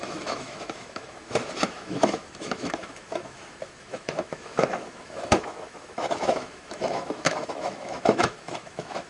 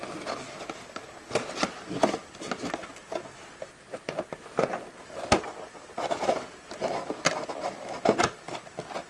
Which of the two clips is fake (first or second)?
first